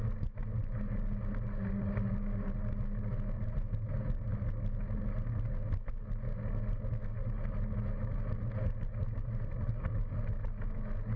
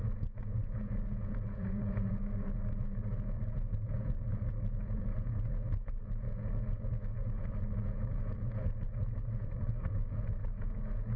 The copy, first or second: second